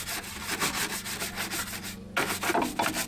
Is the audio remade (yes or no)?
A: no